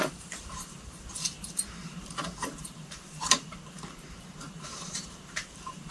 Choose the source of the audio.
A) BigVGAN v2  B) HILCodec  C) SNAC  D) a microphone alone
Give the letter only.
A